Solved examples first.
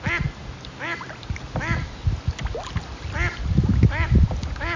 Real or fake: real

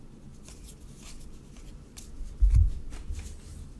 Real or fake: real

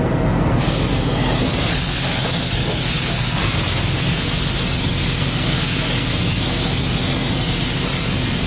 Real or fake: fake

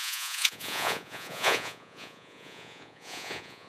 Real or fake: fake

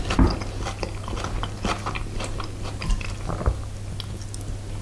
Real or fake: real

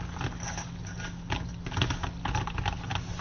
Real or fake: real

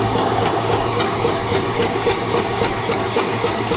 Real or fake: fake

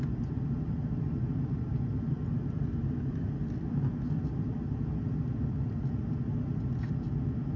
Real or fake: real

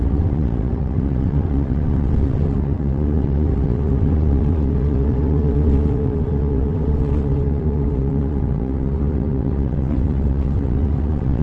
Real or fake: fake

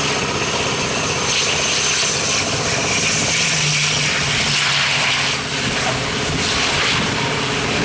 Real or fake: real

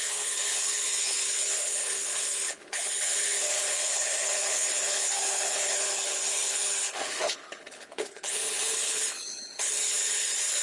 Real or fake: fake